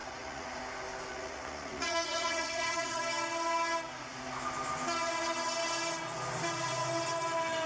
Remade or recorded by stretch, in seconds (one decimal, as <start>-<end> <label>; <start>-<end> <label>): 0.0-0.6 remade; 0.6-1.1 recorded; 1.1-3.0 remade; 3.0-7.7 recorded